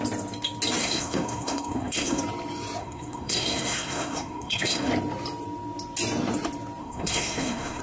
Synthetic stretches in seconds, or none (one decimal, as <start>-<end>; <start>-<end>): 0.8-2.2; 2.8-4.9; 6.8-7.8